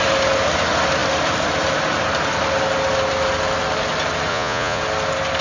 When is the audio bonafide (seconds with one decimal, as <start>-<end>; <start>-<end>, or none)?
0.0-4.3; 4.8-5.4